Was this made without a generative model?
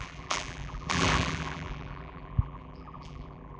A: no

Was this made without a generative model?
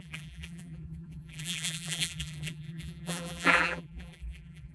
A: no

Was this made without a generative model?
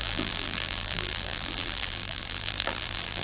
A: no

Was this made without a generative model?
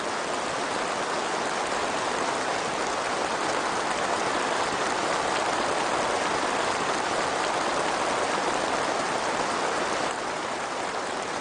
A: yes